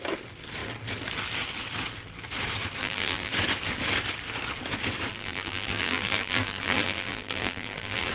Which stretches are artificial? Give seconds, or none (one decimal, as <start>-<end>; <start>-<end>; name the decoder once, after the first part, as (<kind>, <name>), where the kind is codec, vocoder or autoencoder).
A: 2.8-3.3 (vocoder, BigVGAN v2); 5.1-8.1